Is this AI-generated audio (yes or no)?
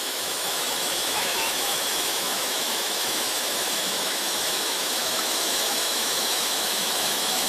yes